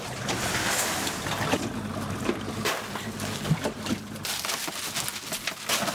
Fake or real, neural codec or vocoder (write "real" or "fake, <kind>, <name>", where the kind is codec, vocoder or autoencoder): real